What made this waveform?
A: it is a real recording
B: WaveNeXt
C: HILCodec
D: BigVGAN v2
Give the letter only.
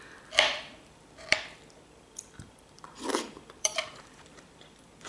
D